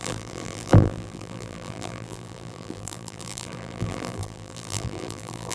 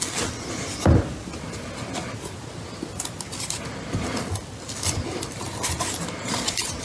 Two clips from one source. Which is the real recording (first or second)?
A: second